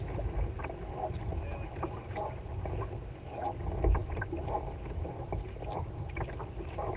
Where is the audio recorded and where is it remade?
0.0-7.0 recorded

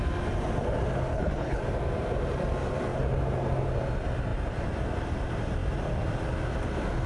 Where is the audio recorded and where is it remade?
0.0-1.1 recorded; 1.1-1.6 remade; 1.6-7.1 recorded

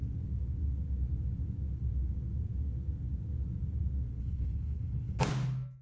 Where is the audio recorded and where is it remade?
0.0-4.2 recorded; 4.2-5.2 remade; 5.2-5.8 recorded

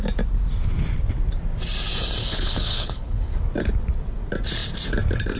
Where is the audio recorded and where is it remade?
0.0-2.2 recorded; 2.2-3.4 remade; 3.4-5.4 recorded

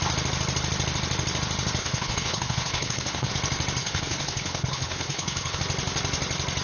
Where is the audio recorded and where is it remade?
0.0-1.8 recorded; 1.8-3.3 remade; 3.3-3.8 recorded; 3.8-5.6 remade; 5.6-6.6 recorded

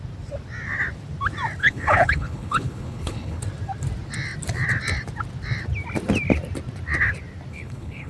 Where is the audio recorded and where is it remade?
0.0-1.6 recorded; 1.6-3.4 remade; 3.4-7.5 recorded; 7.5-8.1 remade